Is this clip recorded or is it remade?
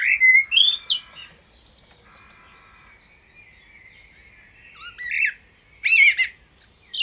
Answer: recorded